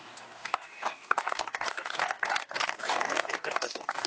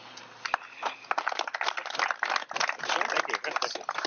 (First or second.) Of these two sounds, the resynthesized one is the first